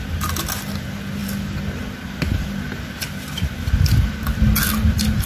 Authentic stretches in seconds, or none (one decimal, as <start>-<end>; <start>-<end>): 0.0-5.3